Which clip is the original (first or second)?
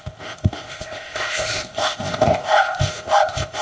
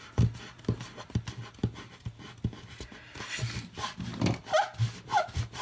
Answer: second